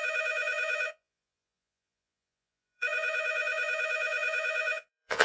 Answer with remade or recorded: remade